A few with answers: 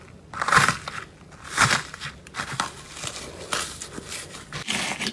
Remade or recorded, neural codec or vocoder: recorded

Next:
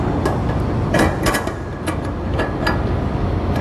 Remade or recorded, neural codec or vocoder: recorded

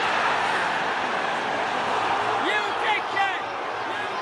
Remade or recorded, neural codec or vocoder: recorded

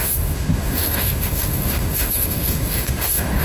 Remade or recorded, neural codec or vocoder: remade, autoencoder, DAC-VAE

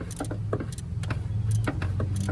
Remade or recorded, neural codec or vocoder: recorded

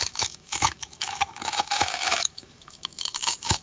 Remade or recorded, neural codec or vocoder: remade, autoencoder, DAC-VAE